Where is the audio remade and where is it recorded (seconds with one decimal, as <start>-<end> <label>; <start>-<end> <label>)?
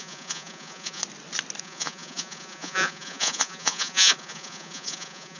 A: 0.0-1.0 remade; 1.0-1.6 recorded; 1.6-5.4 remade